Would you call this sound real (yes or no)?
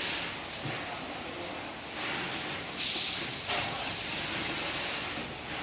yes